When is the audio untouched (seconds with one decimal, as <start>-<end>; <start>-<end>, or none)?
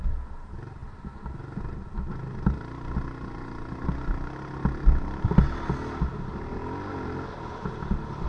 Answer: 0.0-8.3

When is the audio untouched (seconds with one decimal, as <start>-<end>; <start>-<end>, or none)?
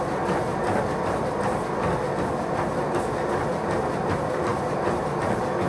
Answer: 0.0-5.7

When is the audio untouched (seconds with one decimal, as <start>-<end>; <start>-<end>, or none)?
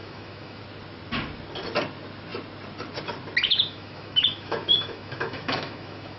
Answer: 0.6-3.5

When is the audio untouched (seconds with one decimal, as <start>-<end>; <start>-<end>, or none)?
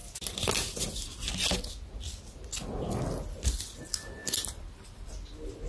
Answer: 0.0-5.7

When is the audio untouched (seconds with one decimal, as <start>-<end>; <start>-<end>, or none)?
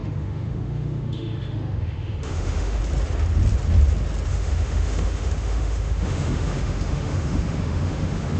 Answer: 2.8-4.3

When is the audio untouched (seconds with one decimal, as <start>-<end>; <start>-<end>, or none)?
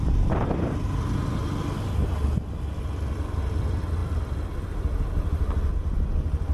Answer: 0.0-6.5